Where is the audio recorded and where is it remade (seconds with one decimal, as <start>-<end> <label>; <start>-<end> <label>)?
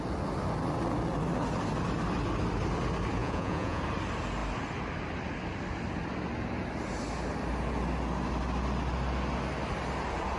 0.0-3.2 recorded; 3.2-3.8 remade; 3.8-10.4 recorded